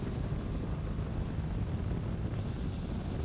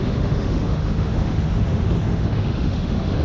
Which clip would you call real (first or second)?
first